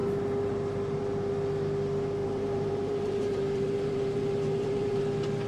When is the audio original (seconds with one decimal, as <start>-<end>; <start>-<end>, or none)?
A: 0.0-2.2; 5.0-5.5